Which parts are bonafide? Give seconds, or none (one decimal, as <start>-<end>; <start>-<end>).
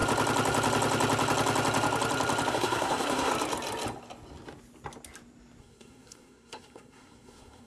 0.0-2.5; 3.3-5.6